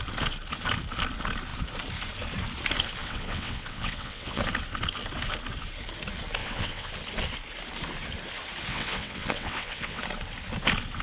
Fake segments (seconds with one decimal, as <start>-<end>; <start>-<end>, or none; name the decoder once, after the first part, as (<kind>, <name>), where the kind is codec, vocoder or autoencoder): 3.0-4.4 (vocoder, WaveNeXt); 6.4-6.9; 8.7-10.0